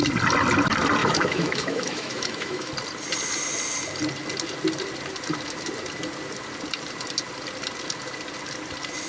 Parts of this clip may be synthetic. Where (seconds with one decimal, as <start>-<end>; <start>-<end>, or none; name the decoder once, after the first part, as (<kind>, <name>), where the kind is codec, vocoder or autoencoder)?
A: 1.0-2.7 (autoencoder, DAC-VAE)